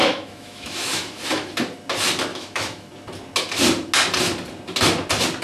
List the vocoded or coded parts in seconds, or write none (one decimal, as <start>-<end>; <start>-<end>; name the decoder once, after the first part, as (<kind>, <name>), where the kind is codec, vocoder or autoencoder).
0.0-1.5 (autoencoder, DAC-VAE); 2.3-2.9